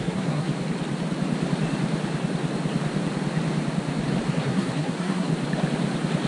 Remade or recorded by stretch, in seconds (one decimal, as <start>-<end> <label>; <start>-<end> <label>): 0.0-0.5 remade; 0.5-4.3 recorded; 4.3-5.3 remade; 5.3-6.3 recorded